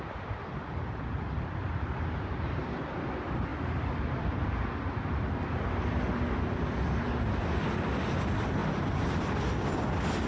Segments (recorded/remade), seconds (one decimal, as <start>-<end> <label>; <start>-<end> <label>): 0.0-10.3 recorded